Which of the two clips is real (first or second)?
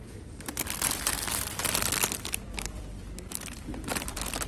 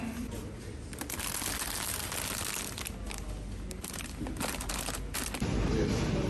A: second